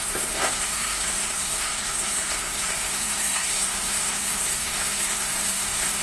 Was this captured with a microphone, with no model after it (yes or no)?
no